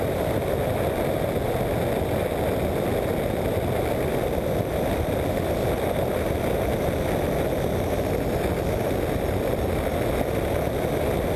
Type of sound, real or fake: real